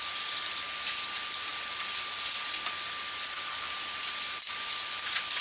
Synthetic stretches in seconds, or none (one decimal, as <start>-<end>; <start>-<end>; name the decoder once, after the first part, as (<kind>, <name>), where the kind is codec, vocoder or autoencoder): none